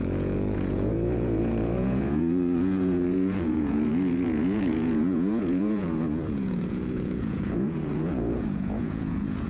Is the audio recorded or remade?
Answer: remade